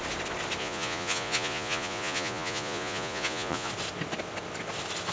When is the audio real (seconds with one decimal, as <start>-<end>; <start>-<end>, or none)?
0.0-0.6; 3.7-5.1